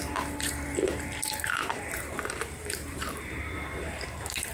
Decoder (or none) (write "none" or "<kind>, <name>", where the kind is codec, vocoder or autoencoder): vocoder, BigVGAN v2